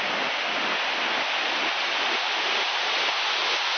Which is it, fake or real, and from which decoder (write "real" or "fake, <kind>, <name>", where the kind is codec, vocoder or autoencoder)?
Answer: real